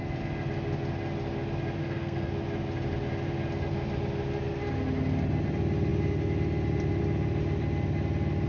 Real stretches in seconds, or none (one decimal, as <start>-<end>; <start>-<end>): 0.0-1.8; 2.3-8.5